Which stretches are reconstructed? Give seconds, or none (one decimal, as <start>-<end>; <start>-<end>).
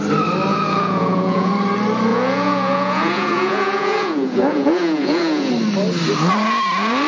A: 0.5-1.5; 2.1-5.5